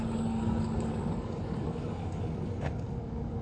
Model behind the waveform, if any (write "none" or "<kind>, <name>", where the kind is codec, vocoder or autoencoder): codec, DAC